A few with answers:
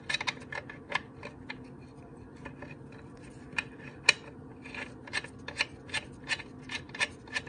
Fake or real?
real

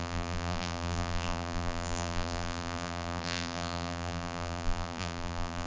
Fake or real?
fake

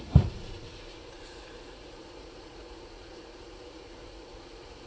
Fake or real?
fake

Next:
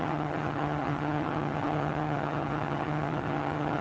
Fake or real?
fake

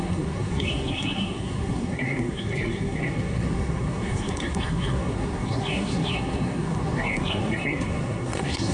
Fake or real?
fake